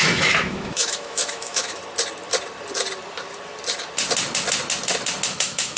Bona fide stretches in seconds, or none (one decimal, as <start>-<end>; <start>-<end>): 1.8-5.3